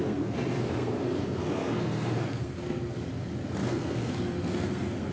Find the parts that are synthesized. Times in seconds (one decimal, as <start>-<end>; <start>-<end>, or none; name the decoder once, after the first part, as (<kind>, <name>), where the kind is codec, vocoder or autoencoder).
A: 0.0-3.1 (codec, SNAC); 3.6-5.1